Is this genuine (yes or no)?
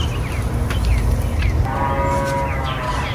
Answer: yes